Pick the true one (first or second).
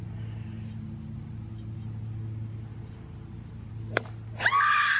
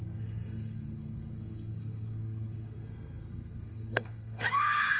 first